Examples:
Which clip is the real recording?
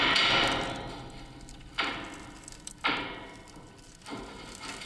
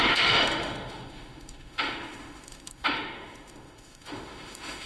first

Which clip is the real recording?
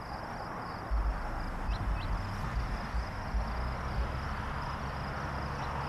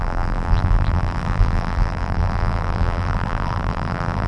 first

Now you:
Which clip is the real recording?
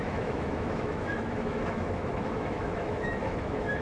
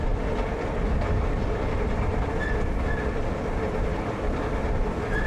second